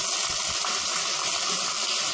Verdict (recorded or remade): recorded